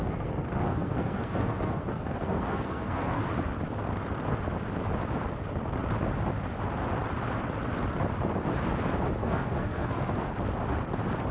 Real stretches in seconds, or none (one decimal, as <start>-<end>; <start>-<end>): 3.2-9.2; 10.3-11.3